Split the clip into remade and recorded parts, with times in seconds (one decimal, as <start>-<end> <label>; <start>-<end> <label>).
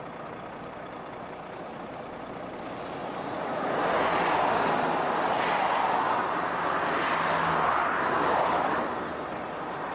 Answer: 0.0-3.0 recorded; 3.0-4.4 remade; 4.4-9.9 recorded